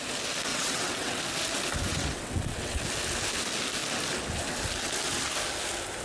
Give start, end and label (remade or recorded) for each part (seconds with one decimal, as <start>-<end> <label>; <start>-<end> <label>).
0.0-0.5 recorded; 0.5-1.2 remade; 1.2-1.9 recorded; 1.9-2.8 remade; 2.8-6.0 recorded